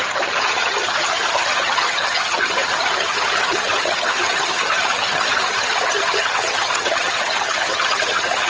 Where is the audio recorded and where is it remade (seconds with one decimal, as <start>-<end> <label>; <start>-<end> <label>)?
0.0-8.5 remade